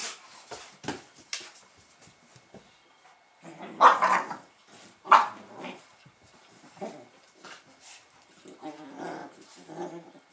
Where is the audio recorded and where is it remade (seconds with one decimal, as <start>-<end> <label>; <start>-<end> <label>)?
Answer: 0.0-3.9 recorded; 3.9-6.9 remade; 6.9-9.2 recorded; 9.2-10.3 remade